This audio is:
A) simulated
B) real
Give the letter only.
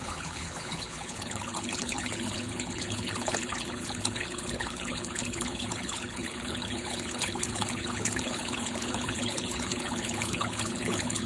A